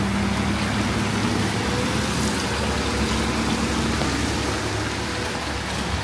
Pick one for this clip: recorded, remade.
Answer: recorded